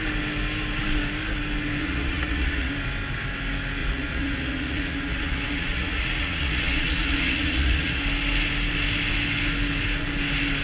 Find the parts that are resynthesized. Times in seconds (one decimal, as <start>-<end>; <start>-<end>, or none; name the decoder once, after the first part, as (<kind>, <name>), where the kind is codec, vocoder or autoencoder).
1.8-2.7 (vocoder, Vocos); 3.8-8.0